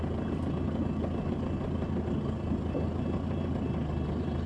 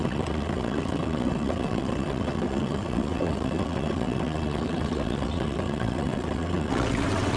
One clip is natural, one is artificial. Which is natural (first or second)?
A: first